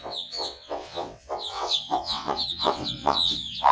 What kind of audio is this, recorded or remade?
remade